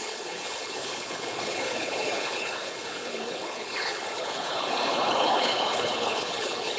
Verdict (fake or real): fake